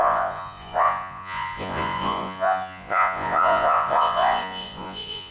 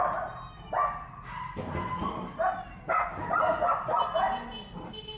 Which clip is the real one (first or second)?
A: second